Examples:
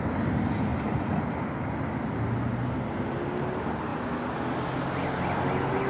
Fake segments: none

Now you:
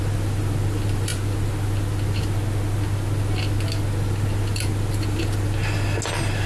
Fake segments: none

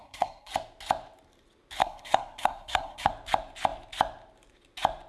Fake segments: 0.0-0.5 (codec, SNAC); 1.8-3.1